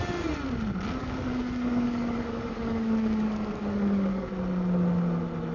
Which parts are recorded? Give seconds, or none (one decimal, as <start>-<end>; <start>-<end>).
0.0-1.0; 4.3-5.5